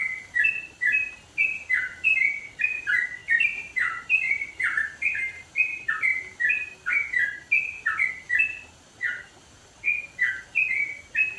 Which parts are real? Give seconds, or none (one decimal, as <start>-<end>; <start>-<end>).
0.0-3.2; 5.5-11.4